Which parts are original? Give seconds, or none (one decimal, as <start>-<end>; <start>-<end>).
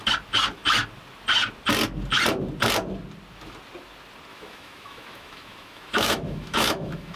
0.0-4.3